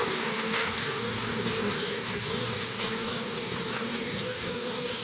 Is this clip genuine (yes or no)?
no